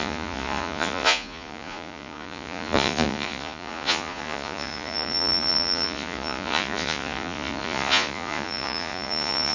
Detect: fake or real fake